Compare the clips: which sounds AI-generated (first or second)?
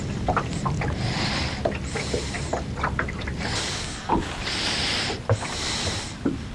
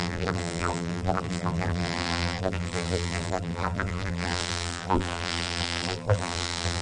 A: second